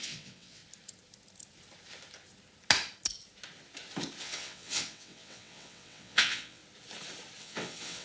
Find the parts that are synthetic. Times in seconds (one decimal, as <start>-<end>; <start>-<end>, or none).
0.0-0.6; 4.2-6.6; 7.4-8.0